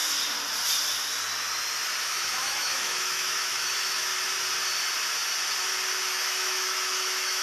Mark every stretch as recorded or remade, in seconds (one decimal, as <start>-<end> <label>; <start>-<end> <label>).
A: 0.0-2.0 recorded; 2.0-4.1 remade; 4.1-6.1 recorded; 6.1-7.4 remade